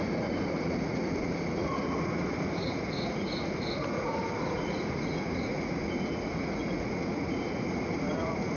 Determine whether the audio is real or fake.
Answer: fake